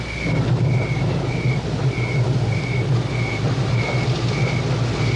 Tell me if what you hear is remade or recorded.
recorded